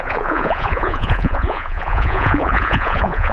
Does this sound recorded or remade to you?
remade